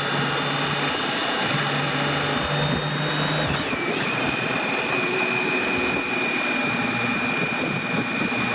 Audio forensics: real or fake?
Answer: real